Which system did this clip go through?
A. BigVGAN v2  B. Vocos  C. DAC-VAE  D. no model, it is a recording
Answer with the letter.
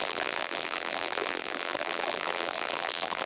A